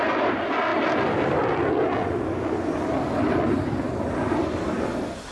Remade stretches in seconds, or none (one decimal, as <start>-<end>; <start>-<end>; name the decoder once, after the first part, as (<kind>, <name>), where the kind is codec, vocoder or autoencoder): none